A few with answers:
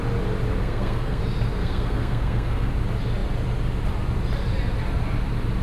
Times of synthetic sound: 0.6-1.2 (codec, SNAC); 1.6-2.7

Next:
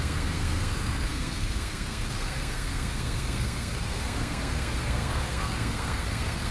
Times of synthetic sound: 0.0-6.5 (codec, SNAC)

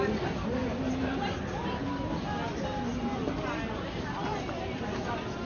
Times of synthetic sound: none

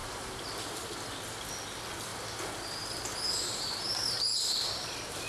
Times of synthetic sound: 0.0-1.2 (vocoder, BigVGAN v2); 2.1-5.3

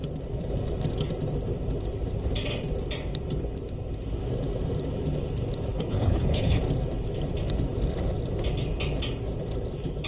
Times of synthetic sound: 5.7-6.6 (codec, HILCodec)

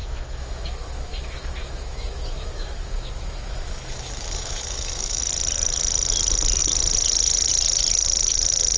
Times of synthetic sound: 0.0-5.2 (autoencoder, DAC-VAE)

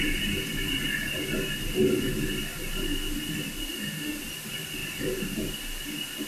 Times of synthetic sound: 3.6-4.2 (autoencoder, DAC-VAE)

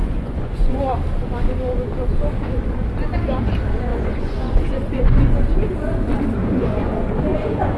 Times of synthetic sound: 0.0-0.8 (vocoder, Vocos); 3.9-5.7; 6.4-7.8